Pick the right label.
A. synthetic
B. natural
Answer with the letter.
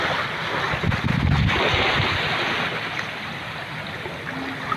B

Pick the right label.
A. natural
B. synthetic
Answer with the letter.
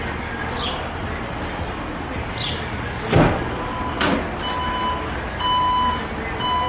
A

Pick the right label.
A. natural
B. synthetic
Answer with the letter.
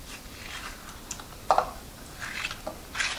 A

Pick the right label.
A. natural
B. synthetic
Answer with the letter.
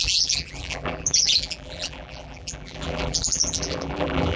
B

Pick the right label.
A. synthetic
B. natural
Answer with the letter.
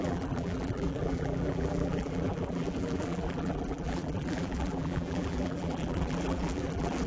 A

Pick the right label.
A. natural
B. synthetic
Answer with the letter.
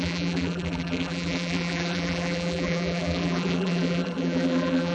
B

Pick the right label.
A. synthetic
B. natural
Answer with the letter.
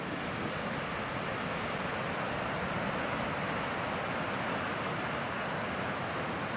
B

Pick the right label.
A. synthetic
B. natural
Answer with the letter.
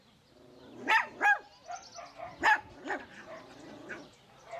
B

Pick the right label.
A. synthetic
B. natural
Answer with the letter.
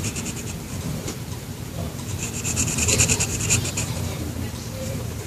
A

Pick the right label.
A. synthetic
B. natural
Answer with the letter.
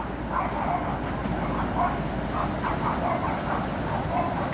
B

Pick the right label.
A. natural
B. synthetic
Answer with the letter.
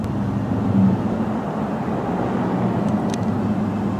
A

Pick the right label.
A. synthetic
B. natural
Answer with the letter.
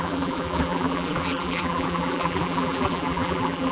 A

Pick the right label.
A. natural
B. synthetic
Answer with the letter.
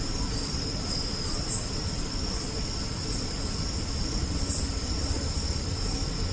B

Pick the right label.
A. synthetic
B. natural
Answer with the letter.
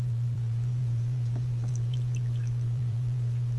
A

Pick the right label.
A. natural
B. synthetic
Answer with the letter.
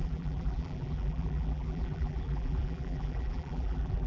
B